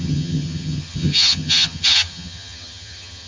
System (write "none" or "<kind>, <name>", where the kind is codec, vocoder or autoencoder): vocoder, HiFi-GAN